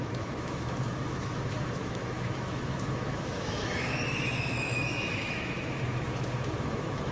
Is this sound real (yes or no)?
no